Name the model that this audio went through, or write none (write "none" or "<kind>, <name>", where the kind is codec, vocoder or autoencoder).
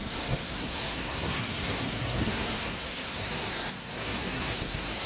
codec, SNAC